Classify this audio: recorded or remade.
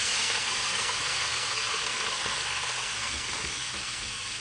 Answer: remade